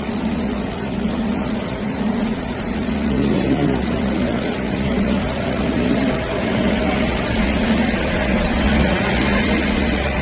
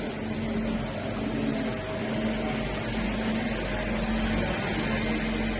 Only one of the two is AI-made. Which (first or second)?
first